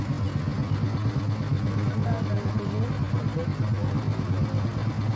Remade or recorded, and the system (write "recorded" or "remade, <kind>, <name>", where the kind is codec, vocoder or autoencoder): recorded